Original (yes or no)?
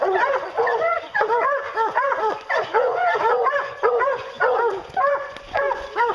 no